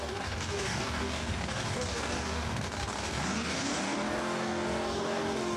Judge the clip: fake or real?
fake